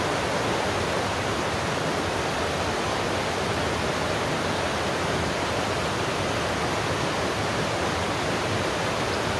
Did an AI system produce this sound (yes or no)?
no